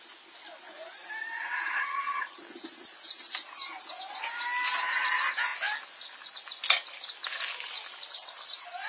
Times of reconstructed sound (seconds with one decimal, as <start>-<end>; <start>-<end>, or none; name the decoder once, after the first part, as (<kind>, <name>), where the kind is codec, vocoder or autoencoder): 1.7-2.4 (vocoder, HiFi-GAN)

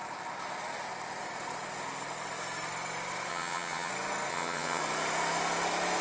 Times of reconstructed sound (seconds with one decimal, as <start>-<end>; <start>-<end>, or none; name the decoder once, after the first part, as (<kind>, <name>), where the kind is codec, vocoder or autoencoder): 3.3-3.9 (vocoder, HiFi-GAN); 4.3-4.8

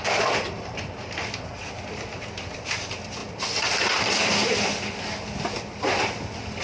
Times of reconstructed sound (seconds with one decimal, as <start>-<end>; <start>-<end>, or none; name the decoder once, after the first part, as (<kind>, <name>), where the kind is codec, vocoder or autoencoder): none

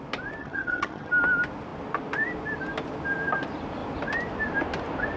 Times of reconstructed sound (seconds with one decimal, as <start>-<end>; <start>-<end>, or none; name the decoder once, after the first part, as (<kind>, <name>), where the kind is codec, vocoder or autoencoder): 0.4-1.1 (vocoder, HiFi-GAN)

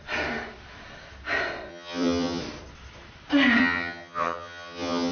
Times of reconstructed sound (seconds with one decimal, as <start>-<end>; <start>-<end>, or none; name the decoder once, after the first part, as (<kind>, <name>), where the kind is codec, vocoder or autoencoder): 1.7-2.4 (vocoder, HiFi-GAN); 3.6-5.1